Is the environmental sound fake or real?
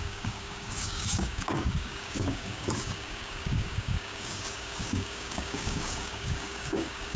fake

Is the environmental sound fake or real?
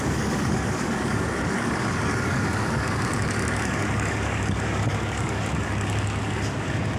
fake